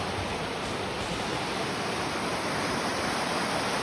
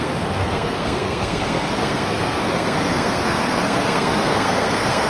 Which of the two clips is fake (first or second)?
second